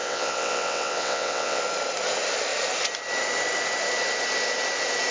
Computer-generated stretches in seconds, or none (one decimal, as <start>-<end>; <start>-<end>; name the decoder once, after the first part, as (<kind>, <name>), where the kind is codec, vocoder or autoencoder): 0.0-1.6 (vocoder, WaveNeXt)